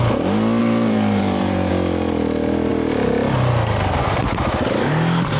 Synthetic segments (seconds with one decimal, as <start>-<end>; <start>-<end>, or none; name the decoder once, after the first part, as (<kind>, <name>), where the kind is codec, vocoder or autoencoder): 0.6-1.7 (vocoder, BigVGAN v2)